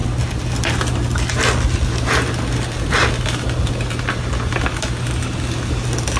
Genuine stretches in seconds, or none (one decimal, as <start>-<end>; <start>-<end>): 0.0-6.2